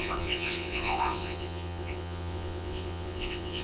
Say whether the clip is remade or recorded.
remade